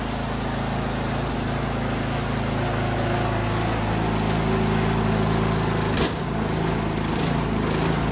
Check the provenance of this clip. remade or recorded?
recorded